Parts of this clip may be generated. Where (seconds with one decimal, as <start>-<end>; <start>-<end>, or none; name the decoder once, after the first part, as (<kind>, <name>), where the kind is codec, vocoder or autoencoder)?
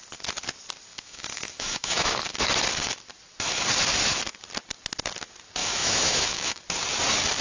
0.9-2.4 (autoencoder, DAC-VAE); 5.6-6.6